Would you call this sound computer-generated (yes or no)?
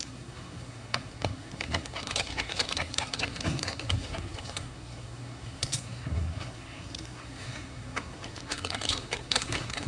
yes